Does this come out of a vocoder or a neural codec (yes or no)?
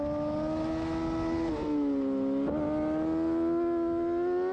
no